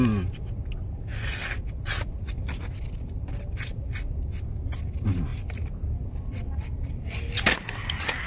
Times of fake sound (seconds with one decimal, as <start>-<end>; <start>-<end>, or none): none